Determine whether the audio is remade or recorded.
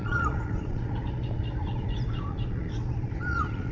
remade